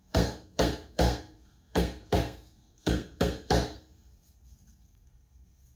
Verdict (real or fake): fake